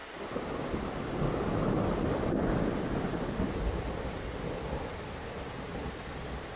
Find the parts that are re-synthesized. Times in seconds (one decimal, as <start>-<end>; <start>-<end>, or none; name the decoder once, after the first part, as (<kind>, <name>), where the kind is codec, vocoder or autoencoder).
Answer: 3.1-5.7 (vocoder, BigVGAN v2)